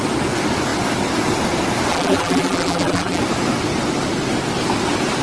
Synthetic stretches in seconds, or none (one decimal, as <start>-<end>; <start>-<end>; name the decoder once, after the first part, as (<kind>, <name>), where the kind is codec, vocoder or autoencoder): 1.9-3.2 (vocoder, BigVGAN v2)